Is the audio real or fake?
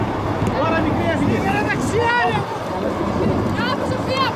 real